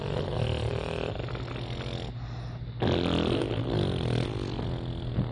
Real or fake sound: real